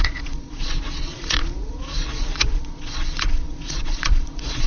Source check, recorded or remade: remade